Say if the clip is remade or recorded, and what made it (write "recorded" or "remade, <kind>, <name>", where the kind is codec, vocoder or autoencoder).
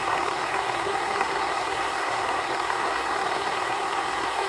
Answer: remade, codec, SNAC